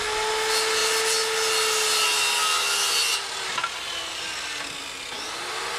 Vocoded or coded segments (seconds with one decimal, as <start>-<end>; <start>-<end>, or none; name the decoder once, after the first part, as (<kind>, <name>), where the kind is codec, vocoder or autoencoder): none